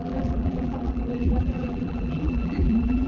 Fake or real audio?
fake